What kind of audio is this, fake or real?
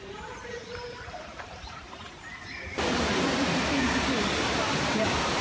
fake